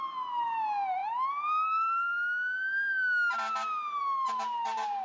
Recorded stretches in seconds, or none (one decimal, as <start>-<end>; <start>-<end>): 0.0-5.0

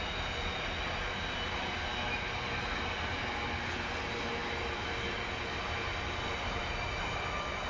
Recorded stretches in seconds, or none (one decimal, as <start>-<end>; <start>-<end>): 0.0-7.7

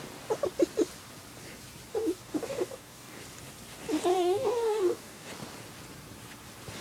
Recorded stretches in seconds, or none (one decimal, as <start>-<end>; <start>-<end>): 0.0-1.9; 3.2-4.1; 5.3-6.8

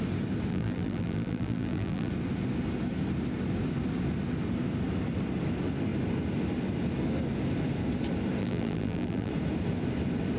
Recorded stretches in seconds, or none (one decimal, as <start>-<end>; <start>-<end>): 0.0-0.5; 2.1-8.4; 9.3-10.4

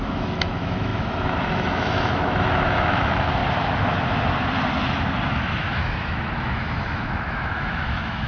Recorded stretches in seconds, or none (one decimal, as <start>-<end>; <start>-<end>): 3.4-5.3